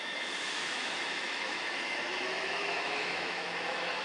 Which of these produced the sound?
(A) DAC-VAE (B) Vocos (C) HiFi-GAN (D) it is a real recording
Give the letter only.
A